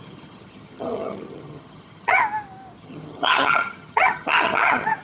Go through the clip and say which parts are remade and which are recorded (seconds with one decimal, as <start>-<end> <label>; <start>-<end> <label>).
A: 0.0-2.2 remade; 2.2-2.8 recorded; 2.8-5.0 remade